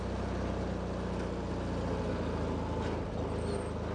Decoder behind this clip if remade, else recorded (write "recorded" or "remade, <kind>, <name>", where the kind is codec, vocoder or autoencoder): recorded